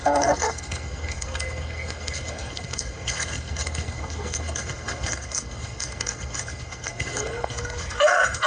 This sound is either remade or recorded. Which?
remade